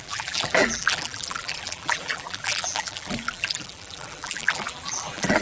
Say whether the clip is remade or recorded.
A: remade